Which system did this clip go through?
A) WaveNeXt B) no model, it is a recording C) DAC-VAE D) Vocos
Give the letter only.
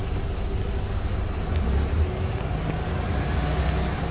B